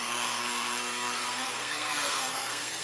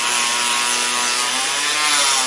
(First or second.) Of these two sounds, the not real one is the first